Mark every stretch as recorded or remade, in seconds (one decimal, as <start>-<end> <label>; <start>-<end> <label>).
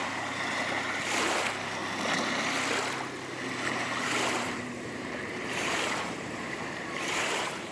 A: 0.0-1.8 remade; 1.8-3.6 recorded; 3.6-7.7 remade